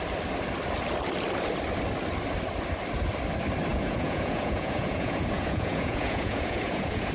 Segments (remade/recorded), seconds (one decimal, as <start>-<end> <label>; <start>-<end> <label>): 0.0-3.7 recorded; 3.7-7.1 remade